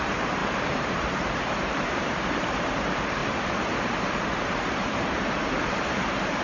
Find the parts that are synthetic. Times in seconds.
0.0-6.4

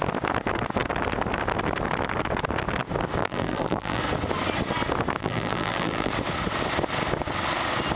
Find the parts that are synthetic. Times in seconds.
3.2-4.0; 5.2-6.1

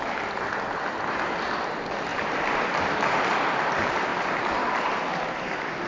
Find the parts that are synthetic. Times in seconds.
0.0-2.1; 2.6-4.1; 5.5-5.9

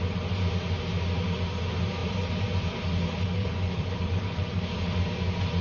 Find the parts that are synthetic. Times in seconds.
2.0-2.8; 3.4-4.7